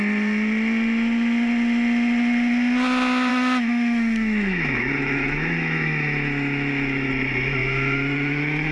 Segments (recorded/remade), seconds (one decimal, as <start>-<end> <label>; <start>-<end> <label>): 0.0-3.3 recorded; 3.3-7.1 remade; 7.1-7.6 recorded; 7.6-8.7 remade

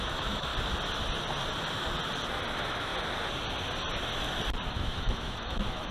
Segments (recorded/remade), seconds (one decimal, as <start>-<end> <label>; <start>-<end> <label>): 0.0-0.5 remade; 0.5-2.5 recorded; 2.5-2.9 remade; 2.9-4.7 recorded; 4.7-5.9 remade